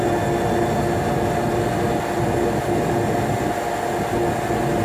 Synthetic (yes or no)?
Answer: no